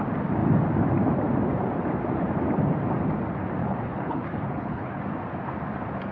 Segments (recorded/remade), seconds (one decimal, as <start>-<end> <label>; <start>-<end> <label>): 0.0-3.6 recorded; 3.6-5.0 remade; 5.0-6.1 recorded